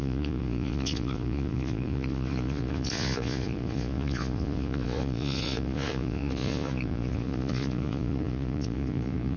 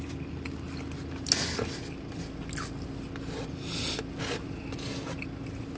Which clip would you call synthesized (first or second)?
first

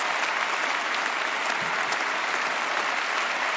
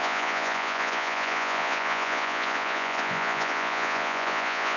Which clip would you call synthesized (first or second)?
second